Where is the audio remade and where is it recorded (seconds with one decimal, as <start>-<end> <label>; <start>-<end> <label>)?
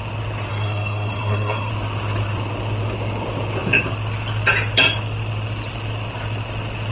0.0-0.5 recorded; 0.5-1.7 remade; 1.7-6.9 recorded